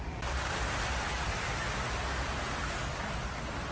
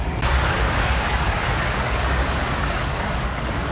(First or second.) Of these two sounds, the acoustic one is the first